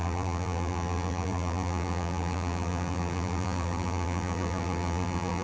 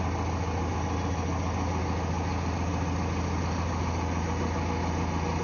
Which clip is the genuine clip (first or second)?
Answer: second